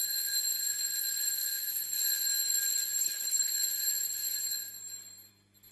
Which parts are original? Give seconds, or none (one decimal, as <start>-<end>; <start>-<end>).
0.0-3.0; 3.5-5.7